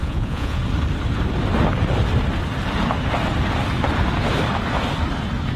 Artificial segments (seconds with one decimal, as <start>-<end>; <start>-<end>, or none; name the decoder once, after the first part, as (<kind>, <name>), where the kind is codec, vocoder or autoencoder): 0.0-0.6 (vocoder, Vocos)